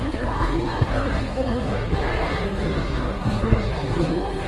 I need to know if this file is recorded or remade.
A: remade